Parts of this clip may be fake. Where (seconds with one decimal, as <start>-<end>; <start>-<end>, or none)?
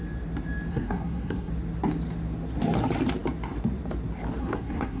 0.7-1.5; 4.4-5.0